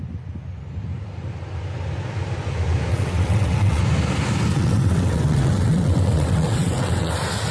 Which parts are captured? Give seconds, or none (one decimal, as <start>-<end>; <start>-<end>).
0.0-2.9; 3.8-4.5; 7.1-7.5